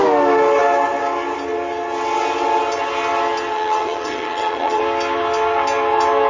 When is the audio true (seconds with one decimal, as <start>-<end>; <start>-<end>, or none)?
0.0-3.5; 4.8-6.3